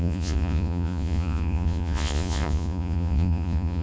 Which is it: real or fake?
fake